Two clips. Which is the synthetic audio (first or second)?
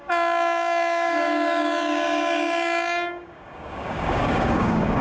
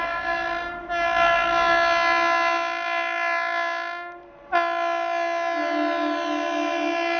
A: first